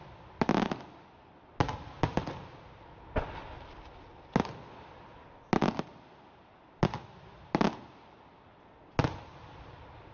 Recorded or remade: recorded